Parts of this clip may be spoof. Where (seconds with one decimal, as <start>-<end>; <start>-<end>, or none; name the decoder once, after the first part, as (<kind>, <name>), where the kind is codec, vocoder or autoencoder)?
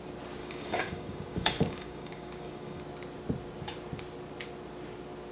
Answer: 0.4-2.8 (codec, DAC)